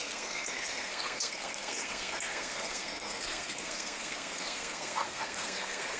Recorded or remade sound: remade